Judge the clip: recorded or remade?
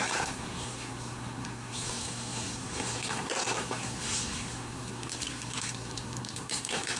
remade